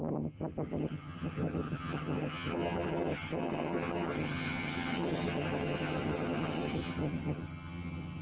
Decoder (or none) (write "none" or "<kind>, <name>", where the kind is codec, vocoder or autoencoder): vocoder, HiFi-GAN